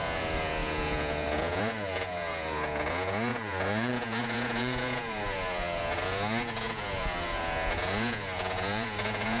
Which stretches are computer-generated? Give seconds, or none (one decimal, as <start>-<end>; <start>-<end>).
0.0-9.4